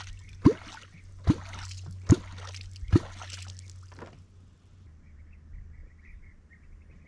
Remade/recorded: recorded